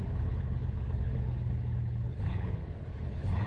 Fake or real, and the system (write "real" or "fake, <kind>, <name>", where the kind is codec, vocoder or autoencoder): fake, codec, HILCodec